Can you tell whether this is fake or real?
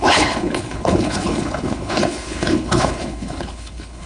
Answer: fake